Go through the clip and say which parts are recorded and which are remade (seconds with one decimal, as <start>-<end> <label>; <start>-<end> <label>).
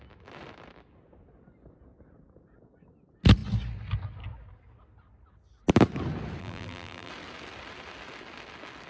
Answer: 0.0-6.4 recorded; 6.4-7.1 remade; 7.1-8.9 recorded